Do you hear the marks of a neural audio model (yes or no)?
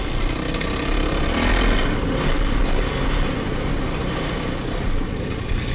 no